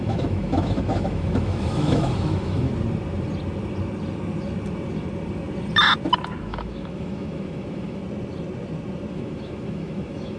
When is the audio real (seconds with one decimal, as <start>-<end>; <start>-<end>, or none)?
2.7-6.4; 8.0-9.1